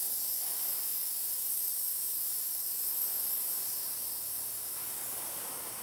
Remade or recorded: remade